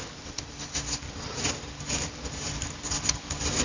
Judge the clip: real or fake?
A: real